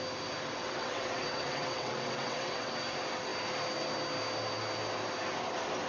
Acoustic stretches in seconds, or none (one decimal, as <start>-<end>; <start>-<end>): 0.0-0.6; 2.7-5.9

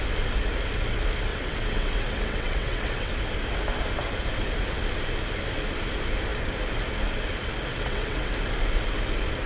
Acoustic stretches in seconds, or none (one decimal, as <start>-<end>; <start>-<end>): 0.0-1.3; 3.1-7.7; 8.3-9.5